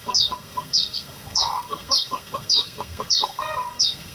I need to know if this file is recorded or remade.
remade